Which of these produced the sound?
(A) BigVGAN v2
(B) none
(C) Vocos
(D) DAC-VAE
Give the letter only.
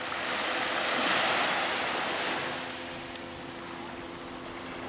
B